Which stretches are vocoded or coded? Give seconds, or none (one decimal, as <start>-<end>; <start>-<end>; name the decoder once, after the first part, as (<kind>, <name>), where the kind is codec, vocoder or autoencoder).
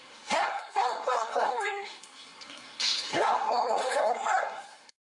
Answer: 0.0-5.1 (codec, SNAC)